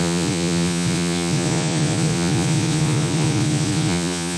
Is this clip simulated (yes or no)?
yes